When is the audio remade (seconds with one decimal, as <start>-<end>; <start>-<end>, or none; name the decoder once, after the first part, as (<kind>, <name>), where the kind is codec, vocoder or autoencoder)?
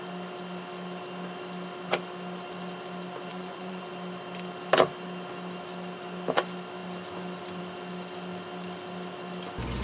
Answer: 3.3-3.8 (vocoder, Vocos)